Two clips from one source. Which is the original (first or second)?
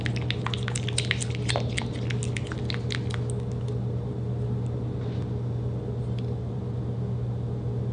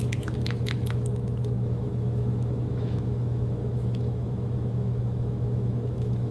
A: first